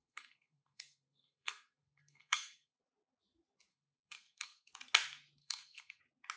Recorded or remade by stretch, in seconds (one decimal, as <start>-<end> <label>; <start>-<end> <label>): 0.0-2.8 remade; 2.8-3.7 recorded; 3.7-4.7 remade; 4.7-5.4 recorded; 5.4-6.0 remade; 6.0-6.4 recorded